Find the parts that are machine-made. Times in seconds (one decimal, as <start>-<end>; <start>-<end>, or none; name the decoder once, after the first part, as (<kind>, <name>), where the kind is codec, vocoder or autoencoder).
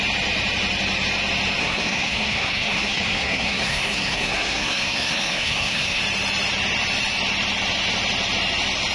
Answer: 1.6-6.0 (codec, SNAC)